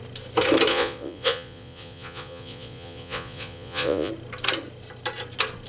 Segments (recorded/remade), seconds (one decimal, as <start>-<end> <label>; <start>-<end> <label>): 0.0-0.7 recorded; 0.7-4.1 remade; 4.1-5.7 recorded